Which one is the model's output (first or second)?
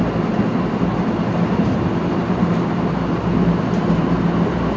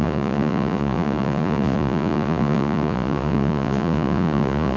second